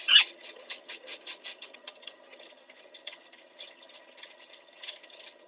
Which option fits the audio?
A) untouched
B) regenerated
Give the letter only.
B